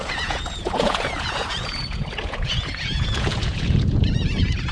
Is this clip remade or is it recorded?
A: remade